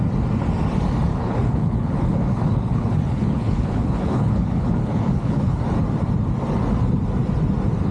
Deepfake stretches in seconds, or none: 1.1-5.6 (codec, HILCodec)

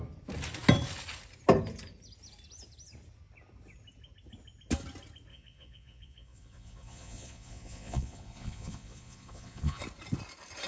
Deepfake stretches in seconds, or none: 5.3-9.8 (vocoder, Vocos)